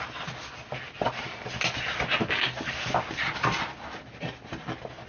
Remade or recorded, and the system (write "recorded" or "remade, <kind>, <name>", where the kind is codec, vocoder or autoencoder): recorded